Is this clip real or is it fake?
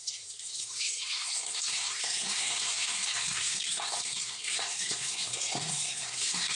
fake